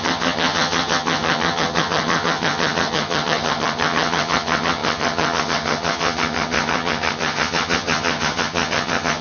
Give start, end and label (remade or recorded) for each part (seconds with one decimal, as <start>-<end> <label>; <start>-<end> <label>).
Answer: 0.0-9.2 remade